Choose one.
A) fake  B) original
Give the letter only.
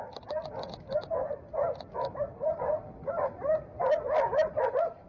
B